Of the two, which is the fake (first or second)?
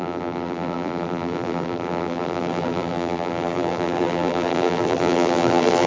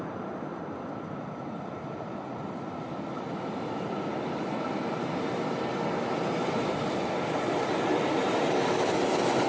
first